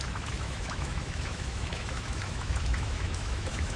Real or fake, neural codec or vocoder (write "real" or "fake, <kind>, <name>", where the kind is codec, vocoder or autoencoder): fake, autoencoder, DAC-VAE